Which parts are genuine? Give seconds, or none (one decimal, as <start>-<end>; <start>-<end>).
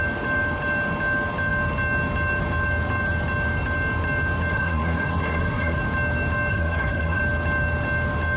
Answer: 0.0-4.5; 5.8-6.5; 7.2-8.4